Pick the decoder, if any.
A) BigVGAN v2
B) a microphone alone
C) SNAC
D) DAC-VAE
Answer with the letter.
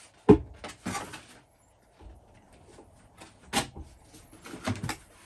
B